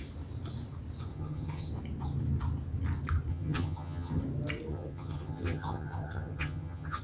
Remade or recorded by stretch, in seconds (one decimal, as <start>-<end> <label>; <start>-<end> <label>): 0.0-1.1 recorded; 1.1-1.7 remade; 1.7-3.3 recorded; 3.3-4.2 remade; 4.2-4.7 recorded; 4.7-7.0 remade